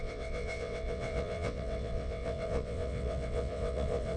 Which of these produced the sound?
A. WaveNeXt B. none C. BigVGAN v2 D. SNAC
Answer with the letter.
A